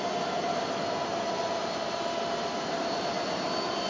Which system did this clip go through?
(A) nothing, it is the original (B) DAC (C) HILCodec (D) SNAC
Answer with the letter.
A